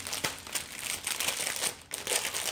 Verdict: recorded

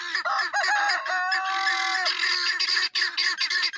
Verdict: recorded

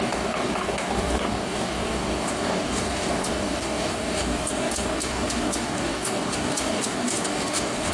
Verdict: remade